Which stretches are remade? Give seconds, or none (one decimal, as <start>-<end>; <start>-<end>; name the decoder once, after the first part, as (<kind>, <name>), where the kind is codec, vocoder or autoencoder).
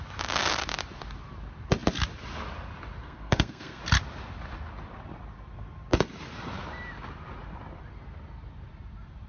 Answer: 3.0-3.8 (codec, SNAC)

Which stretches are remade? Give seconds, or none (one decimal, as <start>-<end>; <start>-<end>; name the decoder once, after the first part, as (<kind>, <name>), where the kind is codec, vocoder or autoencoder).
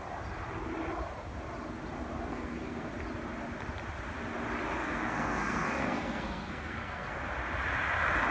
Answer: 2.3-2.9 (codec, SNAC); 4.8-7.2